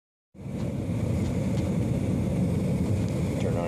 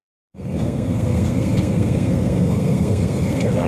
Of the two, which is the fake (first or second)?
second